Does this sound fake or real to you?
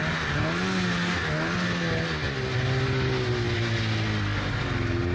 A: real